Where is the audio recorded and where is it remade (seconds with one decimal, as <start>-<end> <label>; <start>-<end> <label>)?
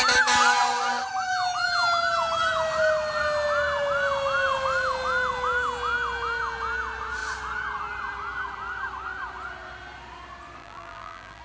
0.0-10.6 recorded; 10.6-11.4 remade